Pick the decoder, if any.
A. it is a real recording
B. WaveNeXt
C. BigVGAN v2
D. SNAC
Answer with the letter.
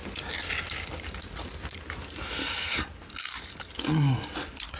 A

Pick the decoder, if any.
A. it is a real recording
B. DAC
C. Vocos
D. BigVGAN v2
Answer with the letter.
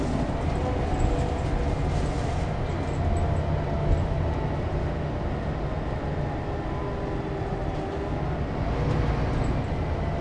A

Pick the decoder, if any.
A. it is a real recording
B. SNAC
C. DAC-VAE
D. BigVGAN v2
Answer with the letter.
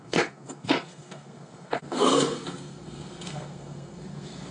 B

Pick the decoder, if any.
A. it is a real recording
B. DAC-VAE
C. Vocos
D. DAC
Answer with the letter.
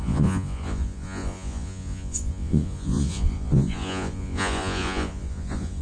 C